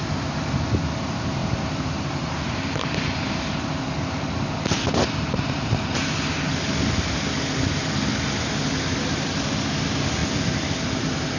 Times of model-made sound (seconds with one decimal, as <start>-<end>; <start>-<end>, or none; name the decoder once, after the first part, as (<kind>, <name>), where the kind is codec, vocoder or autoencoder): 1.4-3.3 (vocoder, BigVGAN v2)